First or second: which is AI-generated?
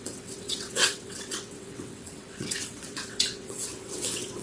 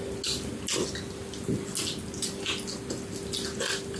first